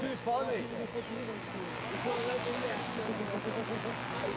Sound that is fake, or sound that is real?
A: fake